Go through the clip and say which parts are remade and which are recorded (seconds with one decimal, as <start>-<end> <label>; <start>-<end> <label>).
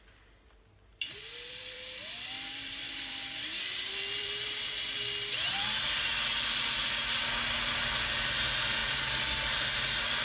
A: 0.0-0.9 recorded; 0.9-6.0 remade; 6.0-10.2 recorded